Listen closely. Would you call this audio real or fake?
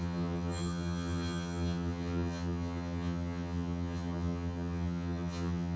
fake